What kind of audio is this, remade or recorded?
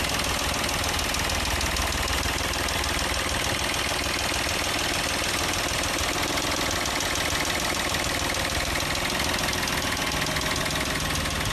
recorded